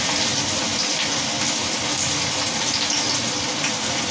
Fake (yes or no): no